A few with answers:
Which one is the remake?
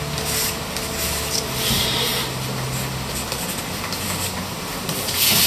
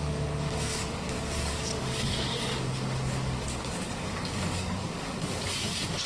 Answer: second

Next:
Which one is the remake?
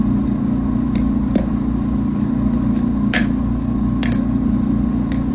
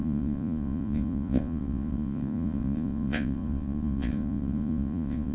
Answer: second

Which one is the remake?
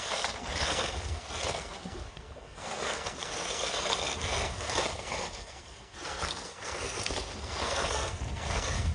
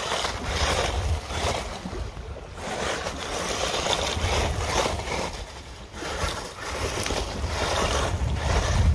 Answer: first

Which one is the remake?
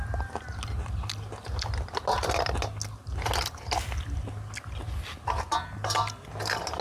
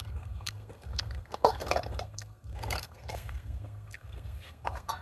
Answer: second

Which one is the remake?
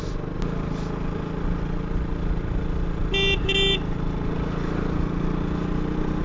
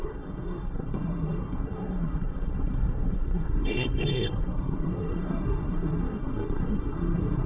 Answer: second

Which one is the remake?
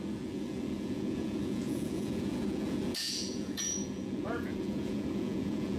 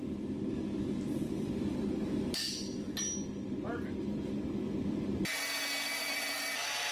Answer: first